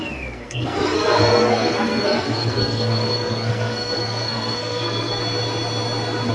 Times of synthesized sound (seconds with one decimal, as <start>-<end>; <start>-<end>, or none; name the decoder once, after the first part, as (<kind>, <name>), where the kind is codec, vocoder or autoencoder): 0.0-5.2 (codec, SNAC)